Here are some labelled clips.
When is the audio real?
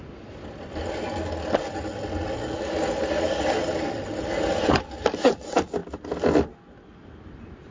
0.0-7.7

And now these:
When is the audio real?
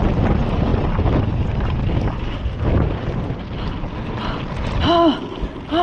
0.0-5.8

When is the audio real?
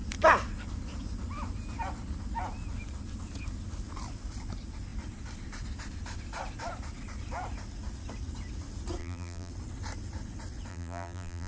0.0-9.0; 9.5-10.7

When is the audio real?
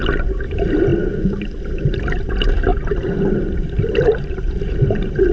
0.0-2.7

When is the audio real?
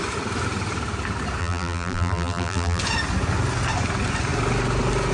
0.0-1.4; 2.8-5.1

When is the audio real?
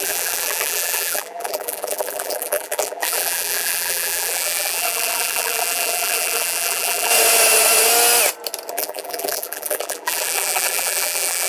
7.1-8.7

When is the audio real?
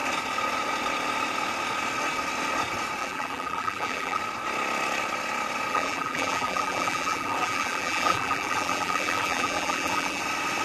0.0-3.0; 4.2-5.7; 10.2-10.6